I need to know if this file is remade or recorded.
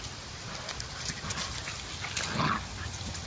recorded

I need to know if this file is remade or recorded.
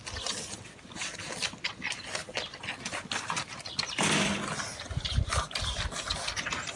recorded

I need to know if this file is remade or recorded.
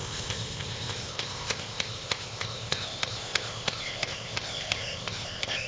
remade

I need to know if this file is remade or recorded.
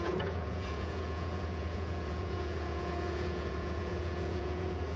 remade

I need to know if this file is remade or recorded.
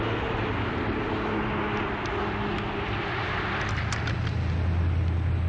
recorded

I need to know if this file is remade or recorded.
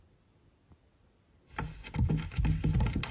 recorded